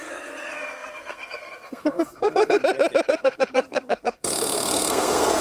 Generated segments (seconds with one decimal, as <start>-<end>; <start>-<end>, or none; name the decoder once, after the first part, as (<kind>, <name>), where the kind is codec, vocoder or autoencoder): 0.0-2.6 (codec, SNAC); 3.1-5.4